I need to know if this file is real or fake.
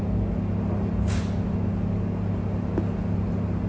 real